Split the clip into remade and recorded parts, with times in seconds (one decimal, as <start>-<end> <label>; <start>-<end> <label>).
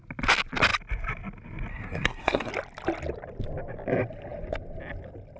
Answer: 0.0-1.7 recorded; 1.7-2.5 remade; 2.5-5.4 recorded